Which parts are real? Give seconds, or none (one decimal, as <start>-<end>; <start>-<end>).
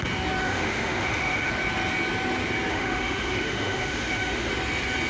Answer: 0.0-0.4; 1.5-2.7; 4.5-5.1